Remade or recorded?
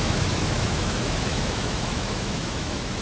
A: remade